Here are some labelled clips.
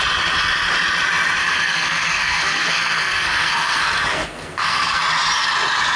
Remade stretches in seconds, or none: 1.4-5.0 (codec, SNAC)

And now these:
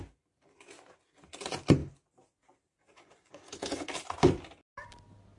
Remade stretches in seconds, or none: none

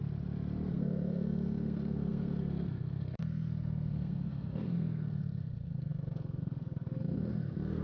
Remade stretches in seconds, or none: 0.7-7.8 (codec, SNAC)

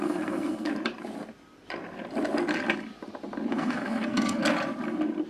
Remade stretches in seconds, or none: 0.0-0.7 (codec, SNAC); 3.5-4.4

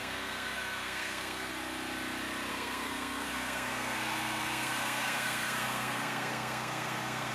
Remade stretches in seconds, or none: 0.0-1.5 (codec, SNAC); 2.5-7.3